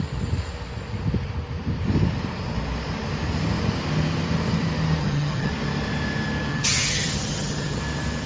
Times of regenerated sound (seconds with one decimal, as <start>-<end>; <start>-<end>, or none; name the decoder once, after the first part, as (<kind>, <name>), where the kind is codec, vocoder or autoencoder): 5.0-5.5 (vocoder, HiFi-GAN); 6.5-7.8